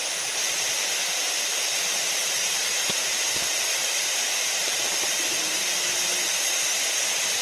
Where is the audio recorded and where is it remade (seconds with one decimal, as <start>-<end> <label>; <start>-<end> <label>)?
0.0-1.5 recorded; 1.5-5.0 remade; 5.0-7.4 recorded